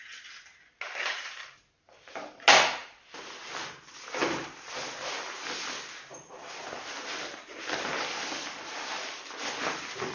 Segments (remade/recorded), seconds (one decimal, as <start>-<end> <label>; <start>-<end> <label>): 0.0-2.8 recorded; 2.8-3.7 remade; 3.7-10.1 recorded